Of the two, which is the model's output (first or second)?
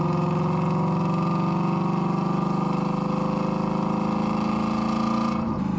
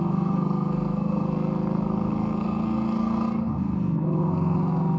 second